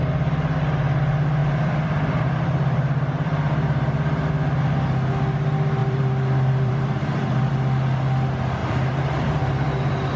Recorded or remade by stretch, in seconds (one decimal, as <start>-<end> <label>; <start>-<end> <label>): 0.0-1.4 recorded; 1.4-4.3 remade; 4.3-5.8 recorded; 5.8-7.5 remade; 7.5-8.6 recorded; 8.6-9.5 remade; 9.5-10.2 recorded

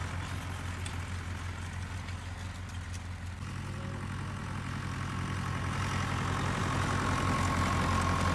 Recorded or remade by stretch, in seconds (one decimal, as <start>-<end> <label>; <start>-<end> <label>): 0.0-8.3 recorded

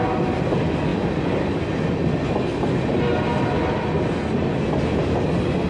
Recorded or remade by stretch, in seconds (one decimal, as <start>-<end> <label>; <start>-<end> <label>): 0.0-0.9 recorded; 0.9-2.0 remade; 2.0-5.7 recorded

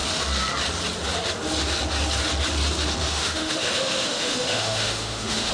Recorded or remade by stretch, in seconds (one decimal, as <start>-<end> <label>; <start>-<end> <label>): 0.0-3.1 recorded; 3.1-5.5 remade

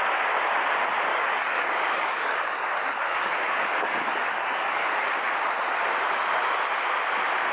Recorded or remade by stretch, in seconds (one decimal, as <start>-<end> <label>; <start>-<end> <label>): 0.0-1.1 recorded; 1.1-5.1 remade; 5.1-7.5 recorded